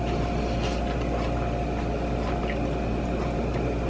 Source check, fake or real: real